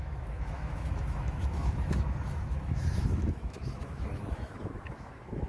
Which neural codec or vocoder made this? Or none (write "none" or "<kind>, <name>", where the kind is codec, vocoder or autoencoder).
autoencoder, DAC-VAE